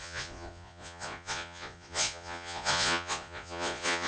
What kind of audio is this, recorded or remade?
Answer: remade